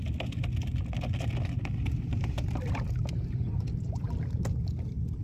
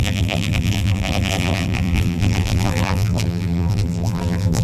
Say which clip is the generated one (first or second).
second